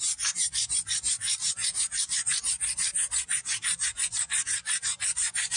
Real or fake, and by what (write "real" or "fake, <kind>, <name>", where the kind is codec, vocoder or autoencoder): fake, vocoder, BigVGAN v2